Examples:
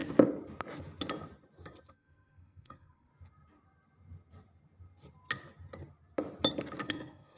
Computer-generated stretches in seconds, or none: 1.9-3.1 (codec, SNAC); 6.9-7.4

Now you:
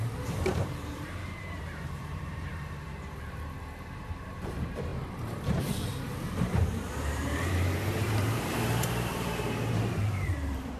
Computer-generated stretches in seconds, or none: 0.0-4.9 (vocoder, BigVGAN v2); 5.6-10.8

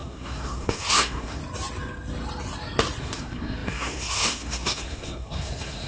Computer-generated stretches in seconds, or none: 0.0-1.4 (codec, SNAC); 3.0-5.9

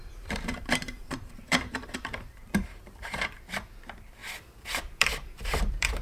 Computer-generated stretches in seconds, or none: 0.0-4.2 (vocoder, BigVGAN v2); 5.0-6.0

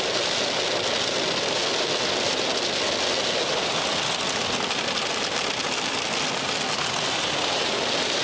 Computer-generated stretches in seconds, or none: none

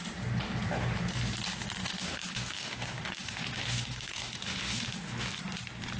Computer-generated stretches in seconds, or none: 1.8-5.4 (autoencoder, DAC-VAE)